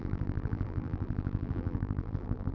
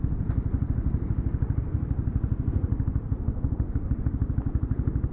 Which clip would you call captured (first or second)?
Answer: second